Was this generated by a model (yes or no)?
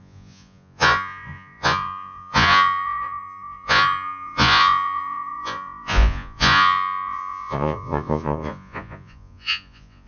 yes